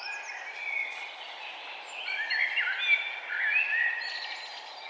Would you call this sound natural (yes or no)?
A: yes